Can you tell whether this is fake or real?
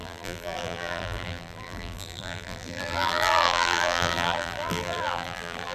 fake